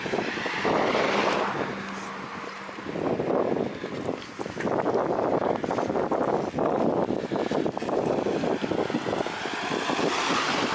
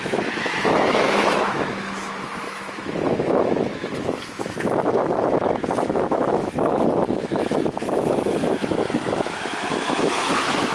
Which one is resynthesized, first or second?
second